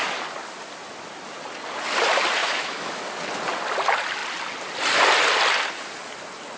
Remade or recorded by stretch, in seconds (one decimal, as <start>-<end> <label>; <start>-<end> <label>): 0.0-2.4 recorded; 2.4-3.0 remade; 3.0-6.6 recorded